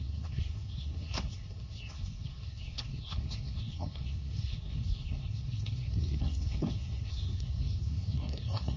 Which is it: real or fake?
fake